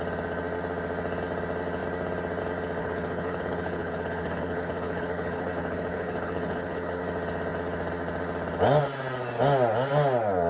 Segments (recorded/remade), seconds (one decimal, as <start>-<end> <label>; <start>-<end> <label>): 0.0-2.8 recorded; 2.8-7.0 remade; 7.0-10.5 recorded